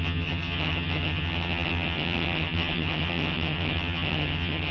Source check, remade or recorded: remade